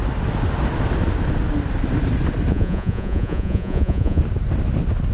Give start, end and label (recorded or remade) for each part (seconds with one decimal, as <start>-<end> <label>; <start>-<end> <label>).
0.0-2.5 recorded; 2.5-4.2 remade; 4.2-5.1 recorded